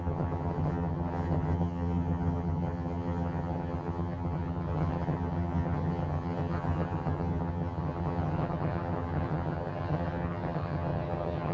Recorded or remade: remade